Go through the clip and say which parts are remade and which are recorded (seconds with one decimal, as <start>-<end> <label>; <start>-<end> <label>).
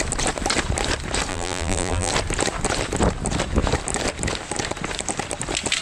0.0-1.3 recorded; 1.3-2.1 remade; 2.1-5.8 recorded